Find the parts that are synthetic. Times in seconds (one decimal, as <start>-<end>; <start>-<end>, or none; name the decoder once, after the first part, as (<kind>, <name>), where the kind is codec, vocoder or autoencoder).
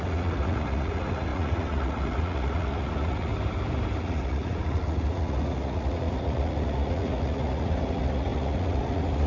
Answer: 0.0-3.3 (vocoder, Vocos); 4.0-9.3